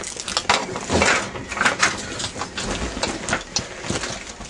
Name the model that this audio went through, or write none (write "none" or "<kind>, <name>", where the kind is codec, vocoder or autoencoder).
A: none